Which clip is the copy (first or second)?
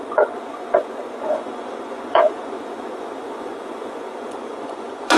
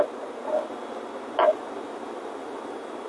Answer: first